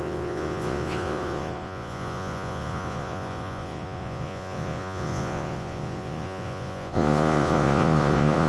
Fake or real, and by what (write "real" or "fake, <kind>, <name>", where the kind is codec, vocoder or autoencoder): fake, vocoder, Vocos